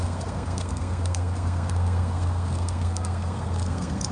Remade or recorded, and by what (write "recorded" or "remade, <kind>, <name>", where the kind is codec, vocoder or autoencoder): remade, codec, SNAC